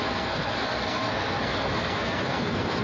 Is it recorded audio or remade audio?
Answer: remade